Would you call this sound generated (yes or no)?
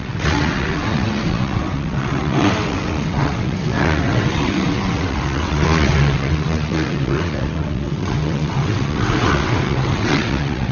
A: yes